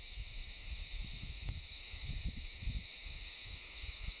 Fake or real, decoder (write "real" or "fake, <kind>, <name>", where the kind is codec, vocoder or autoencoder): fake, autoencoder, DAC-VAE